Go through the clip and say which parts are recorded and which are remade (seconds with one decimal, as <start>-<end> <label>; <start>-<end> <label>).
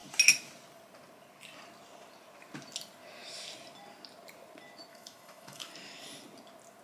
0.0-4.9 recorded; 4.9-5.7 remade; 5.7-6.8 recorded